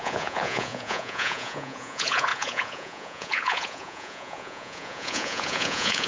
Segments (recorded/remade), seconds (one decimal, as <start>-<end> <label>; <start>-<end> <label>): 0.0-6.1 remade